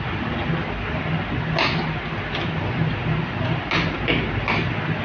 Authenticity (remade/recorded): recorded